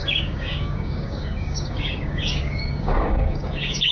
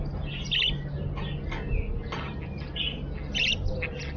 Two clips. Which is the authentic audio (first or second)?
second